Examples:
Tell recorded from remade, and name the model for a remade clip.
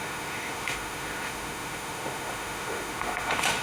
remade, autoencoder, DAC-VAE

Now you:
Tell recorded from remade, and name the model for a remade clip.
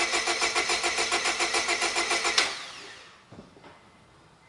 recorded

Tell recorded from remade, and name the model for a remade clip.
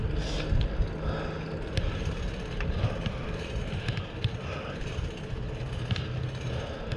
recorded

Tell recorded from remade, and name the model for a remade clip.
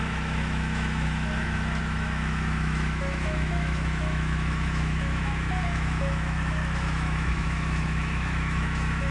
remade, autoencoder, DAC-VAE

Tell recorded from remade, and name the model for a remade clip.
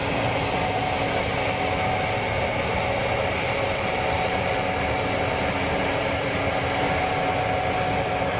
recorded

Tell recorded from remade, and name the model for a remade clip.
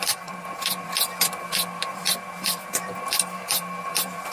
remade, vocoder, BigVGAN v2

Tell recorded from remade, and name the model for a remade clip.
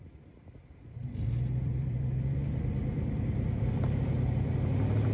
remade, vocoder, BigVGAN v2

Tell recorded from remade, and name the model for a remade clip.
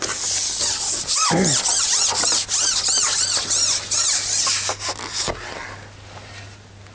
recorded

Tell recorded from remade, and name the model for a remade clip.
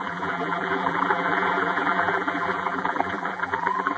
remade, vocoder, BigVGAN v2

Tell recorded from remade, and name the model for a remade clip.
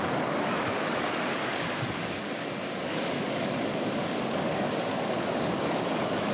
remade, codec, DAC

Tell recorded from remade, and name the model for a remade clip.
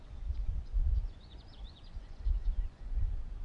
remade, vocoder, Vocos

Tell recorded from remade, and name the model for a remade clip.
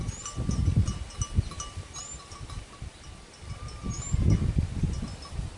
recorded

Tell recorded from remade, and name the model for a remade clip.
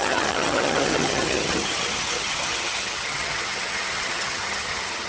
remade, vocoder, HiFi-GAN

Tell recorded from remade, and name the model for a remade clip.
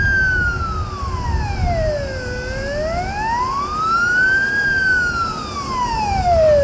recorded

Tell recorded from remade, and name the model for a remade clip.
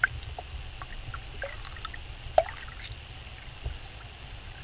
recorded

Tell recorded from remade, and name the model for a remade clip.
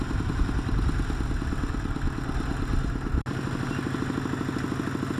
recorded